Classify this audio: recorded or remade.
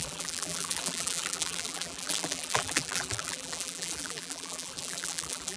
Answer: remade